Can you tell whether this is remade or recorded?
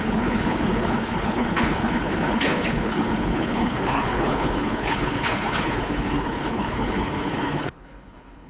remade